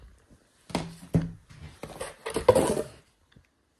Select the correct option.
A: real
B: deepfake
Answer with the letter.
A